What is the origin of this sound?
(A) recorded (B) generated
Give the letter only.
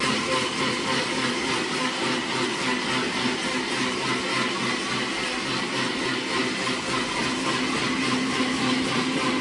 A